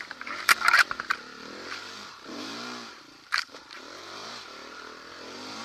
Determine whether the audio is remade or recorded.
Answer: remade